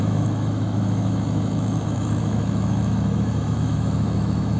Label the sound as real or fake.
fake